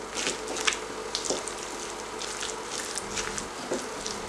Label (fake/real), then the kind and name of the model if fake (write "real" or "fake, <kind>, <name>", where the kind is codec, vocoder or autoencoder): real